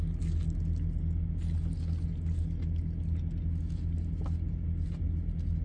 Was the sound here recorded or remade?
recorded